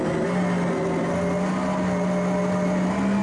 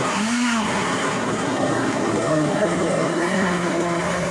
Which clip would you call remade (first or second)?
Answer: second